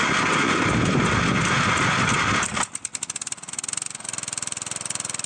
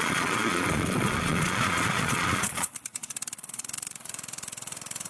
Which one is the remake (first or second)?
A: second